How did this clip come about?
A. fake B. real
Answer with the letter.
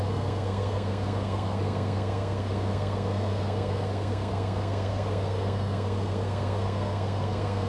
A